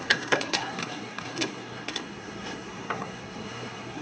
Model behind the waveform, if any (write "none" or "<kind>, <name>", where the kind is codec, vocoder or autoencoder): codec, SNAC